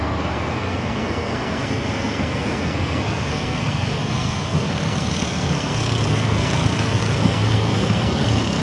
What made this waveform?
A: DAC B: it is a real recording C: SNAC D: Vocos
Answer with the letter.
C